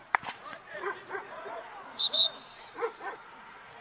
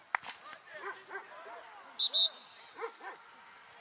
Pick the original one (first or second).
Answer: second